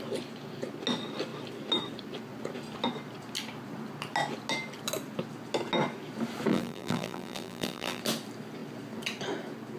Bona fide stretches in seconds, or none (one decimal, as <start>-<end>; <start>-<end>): 0.0-6.5; 8.0-9.8